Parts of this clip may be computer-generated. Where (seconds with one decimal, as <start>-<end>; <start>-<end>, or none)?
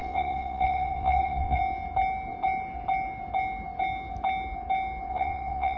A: 0.0-1.6; 5.1-5.8